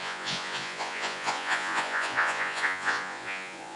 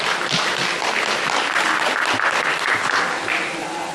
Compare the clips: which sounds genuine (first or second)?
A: second